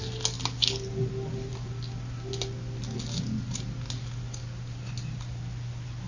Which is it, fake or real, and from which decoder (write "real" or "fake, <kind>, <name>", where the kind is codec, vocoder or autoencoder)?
real